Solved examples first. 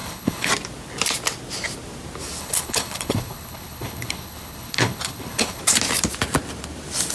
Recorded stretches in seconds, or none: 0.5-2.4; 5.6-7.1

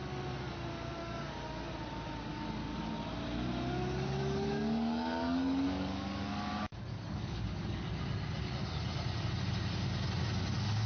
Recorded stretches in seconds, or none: 0.0-1.0; 1.7-2.3; 2.9-4.2; 7.9-10.9